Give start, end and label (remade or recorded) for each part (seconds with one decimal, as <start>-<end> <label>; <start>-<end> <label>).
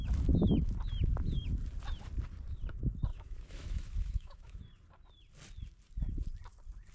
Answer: 0.0-3.1 recorded; 3.1-4.6 remade; 4.6-6.9 recorded